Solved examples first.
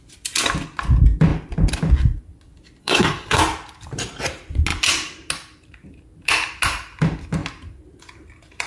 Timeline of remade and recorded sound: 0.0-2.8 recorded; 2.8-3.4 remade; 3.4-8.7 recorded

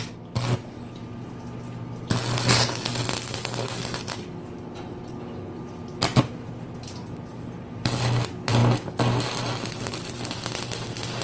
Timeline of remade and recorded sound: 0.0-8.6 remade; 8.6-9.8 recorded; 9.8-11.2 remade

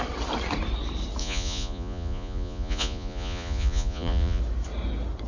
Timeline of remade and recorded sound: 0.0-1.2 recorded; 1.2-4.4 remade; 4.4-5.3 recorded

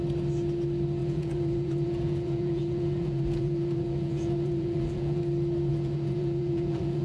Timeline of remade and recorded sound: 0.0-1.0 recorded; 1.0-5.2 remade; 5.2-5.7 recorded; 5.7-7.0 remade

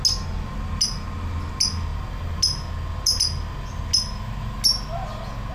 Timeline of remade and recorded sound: 0.0-5.5 recorded

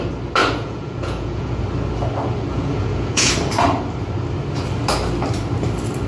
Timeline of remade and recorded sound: 0.0-0.4 recorded; 0.4-1.6 remade; 1.6-2.5 recorded; 2.5-3.3 remade; 3.3-6.1 recorded

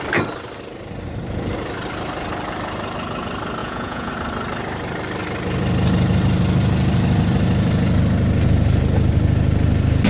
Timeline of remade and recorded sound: 0.0-3.6 recorded; 3.6-4.1 remade; 4.1-10.1 recorded